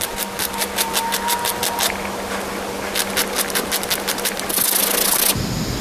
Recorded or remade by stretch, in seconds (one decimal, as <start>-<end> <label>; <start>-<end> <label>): 0.0-5.8 recorded